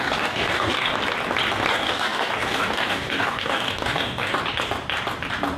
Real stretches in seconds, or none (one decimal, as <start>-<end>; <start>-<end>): 0.9-1.7; 4.4-5.6